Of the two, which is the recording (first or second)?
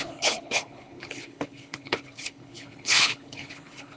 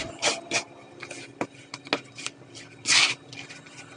second